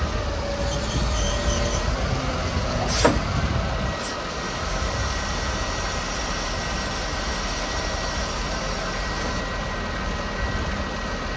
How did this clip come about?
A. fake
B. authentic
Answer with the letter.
B